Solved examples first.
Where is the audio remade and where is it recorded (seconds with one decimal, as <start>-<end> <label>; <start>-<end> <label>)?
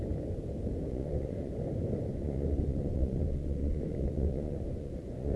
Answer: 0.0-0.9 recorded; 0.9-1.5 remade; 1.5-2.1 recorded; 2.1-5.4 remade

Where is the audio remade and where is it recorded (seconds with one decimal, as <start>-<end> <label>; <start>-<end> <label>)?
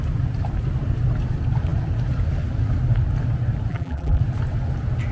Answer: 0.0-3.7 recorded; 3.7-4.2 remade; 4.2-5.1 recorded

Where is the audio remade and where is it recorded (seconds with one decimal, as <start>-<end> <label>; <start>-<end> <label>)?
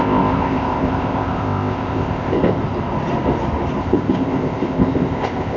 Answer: 0.0-2.6 remade; 2.6-3.8 recorded; 3.8-5.6 remade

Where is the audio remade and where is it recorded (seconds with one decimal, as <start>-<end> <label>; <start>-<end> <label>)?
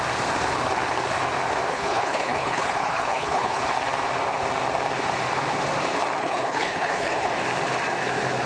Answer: 0.0-1.7 recorded; 1.7-3.6 remade; 3.6-6.2 recorded; 6.2-7.3 remade; 7.3-8.5 recorded